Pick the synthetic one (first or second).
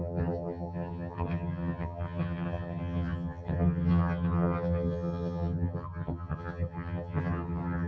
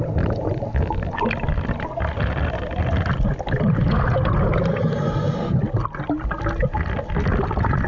first